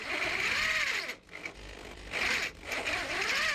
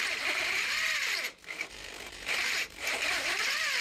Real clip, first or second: first